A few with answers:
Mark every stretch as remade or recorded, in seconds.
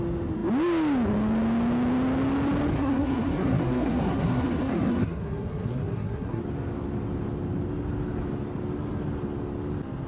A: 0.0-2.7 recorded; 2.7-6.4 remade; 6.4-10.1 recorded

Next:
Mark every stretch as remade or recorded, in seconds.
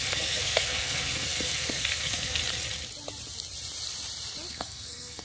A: 0.0-2.4 remade; 2.4-4.5 recorded; 4.5-5.2 remade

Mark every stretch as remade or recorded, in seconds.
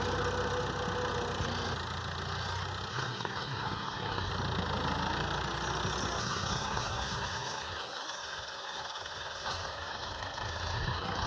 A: 0.0-2.9 recorded; 2.9-4.3 remade; 4.3-6.2 recorded; 6.2-11.3 remade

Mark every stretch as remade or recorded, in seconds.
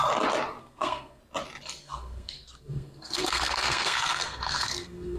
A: 0.0-0.6 recorded; 0.6-1.2 remade; 1.2-1.8 recorded; 1.8-5.2 remade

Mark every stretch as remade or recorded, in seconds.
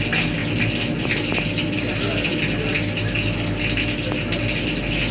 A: 0.0-5.1 recorded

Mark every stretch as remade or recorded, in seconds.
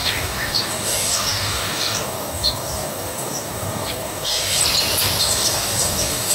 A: 0.0-4.6 remade; 4.6-5.2 recorded; 5.2-6.3 remade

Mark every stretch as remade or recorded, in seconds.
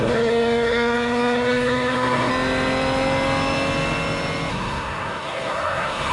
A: 0.0-2.3 remade; 2.3-4.5 recorded; 4.5-6.1 remade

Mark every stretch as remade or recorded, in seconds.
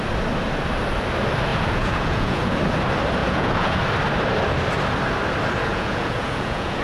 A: 0.0-1.5 recorded; 1.5-2.5 remade; 2.5-3.2 recorded; 3.2-3.8 remade; 3.8-5.7 recorded; 5.7-6.8 remade